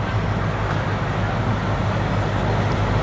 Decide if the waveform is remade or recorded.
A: recorded